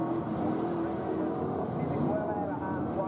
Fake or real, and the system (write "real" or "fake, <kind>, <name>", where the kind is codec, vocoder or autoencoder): real